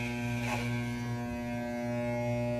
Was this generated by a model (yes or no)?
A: no